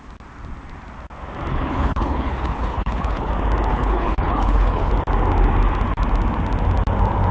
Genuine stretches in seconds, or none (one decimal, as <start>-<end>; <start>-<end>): 0.0-1.5; 3.3-3.7; 4.9-7.3